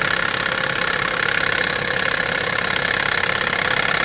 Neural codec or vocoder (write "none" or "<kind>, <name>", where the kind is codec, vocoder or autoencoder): none